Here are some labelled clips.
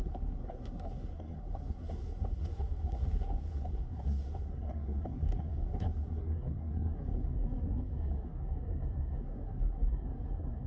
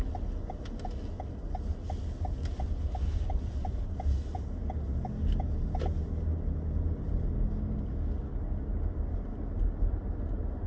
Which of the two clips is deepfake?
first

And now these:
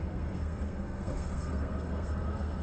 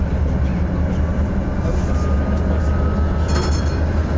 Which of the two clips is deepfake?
first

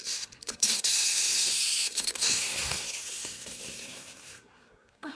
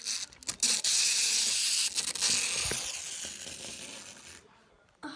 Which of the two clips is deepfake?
first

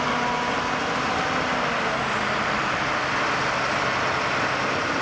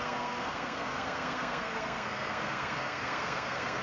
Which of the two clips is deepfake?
second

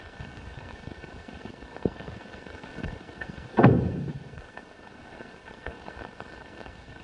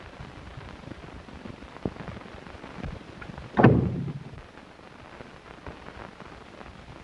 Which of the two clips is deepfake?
first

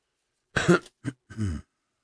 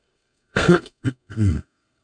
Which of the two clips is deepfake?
second